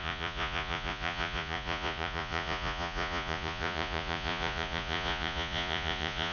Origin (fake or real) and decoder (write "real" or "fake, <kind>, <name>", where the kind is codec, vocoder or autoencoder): fake, vocoder, Vocos